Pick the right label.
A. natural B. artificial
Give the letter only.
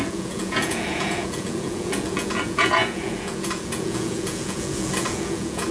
B